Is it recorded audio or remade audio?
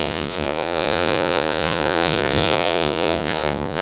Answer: remade